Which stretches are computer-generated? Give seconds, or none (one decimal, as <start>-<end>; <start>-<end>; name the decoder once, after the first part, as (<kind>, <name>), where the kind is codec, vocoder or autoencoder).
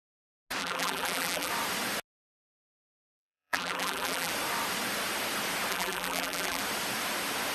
0.6-1.5 (vocoder, BigVGAN v2); 2.4-4.3; 5.7-6.6